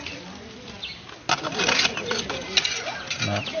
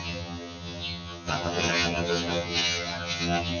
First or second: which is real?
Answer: first